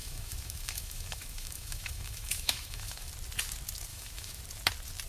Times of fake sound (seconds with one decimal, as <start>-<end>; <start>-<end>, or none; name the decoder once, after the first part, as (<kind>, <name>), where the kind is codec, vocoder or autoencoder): 0.0-3.1 (autoencoder, DAC-VAE); 3.9-4.4